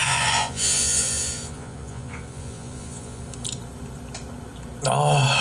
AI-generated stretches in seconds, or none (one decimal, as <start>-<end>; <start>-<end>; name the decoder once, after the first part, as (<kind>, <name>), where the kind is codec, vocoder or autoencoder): 0.0-3.2 (vocoder, Vocos)